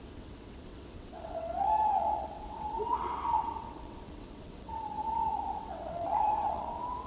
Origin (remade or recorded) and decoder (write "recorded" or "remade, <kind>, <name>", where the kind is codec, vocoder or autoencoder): remade, vocoder, WaveNeXt